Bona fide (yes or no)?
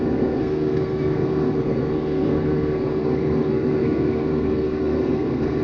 no